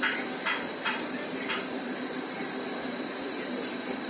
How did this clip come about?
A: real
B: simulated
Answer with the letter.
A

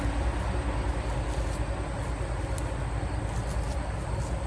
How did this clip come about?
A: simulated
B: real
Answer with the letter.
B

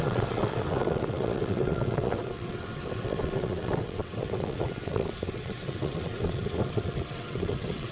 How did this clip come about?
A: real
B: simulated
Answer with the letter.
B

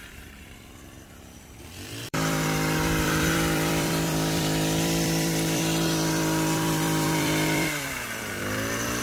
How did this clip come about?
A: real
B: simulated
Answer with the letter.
B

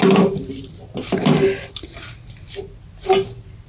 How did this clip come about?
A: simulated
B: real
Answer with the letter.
B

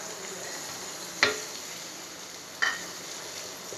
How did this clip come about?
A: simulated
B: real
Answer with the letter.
B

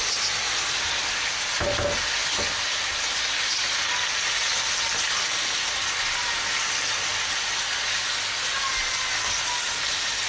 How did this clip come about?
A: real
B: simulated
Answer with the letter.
A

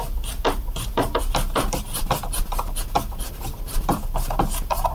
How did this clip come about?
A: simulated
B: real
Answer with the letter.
B